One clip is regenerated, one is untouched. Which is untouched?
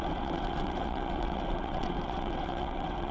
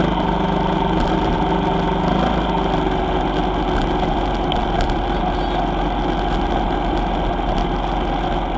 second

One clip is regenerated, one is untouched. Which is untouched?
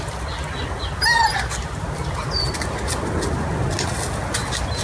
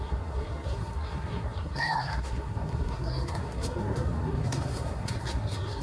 first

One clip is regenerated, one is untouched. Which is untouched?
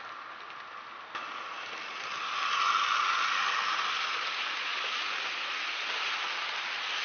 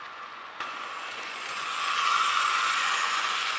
first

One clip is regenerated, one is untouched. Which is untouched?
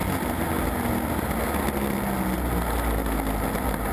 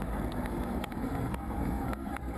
first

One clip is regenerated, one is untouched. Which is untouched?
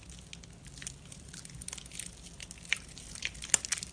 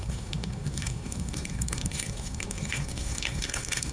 first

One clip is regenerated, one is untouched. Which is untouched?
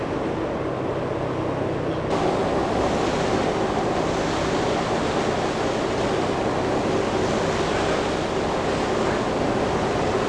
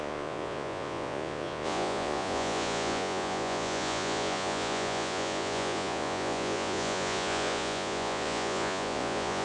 first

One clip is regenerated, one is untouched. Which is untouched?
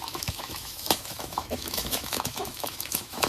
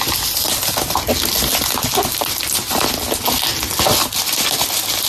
second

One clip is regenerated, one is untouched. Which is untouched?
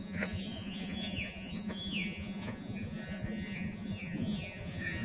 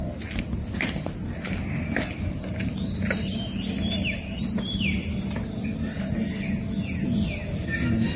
second